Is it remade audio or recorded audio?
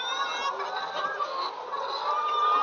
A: recorded